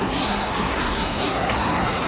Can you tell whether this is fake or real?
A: fake